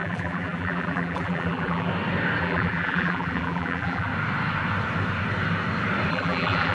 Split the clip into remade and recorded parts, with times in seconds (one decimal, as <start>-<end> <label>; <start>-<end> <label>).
0.0-1.9 remade; 1.9-2.4 recorded; 2.4-4.1 remade; 4.1-6.1 recorded; 6.1-6.7 remade